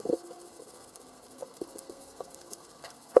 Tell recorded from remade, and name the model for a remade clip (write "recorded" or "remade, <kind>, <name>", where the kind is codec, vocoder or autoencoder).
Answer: remade, codec, SNAC